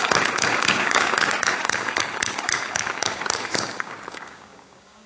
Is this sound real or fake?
fake